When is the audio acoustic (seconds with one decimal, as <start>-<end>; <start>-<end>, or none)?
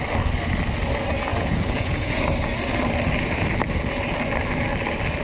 0.0-1.3; 2.2-5.2